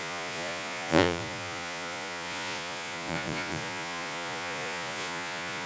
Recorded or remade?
remade